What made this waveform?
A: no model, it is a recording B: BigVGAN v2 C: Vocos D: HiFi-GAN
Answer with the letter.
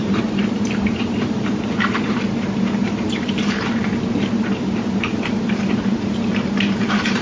B